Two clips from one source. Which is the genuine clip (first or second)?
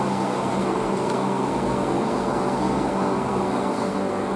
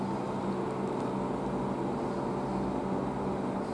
second